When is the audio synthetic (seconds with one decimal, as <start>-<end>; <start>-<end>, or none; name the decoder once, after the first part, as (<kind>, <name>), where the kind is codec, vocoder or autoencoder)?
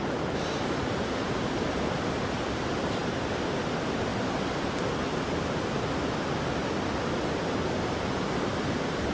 0.0-4.1 (vocoder, BigVGAN v2); 7.4-9.1